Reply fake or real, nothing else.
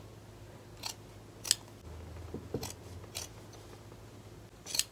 real